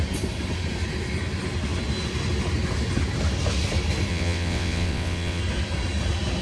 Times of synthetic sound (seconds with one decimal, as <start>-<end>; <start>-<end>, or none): 4.1-5.4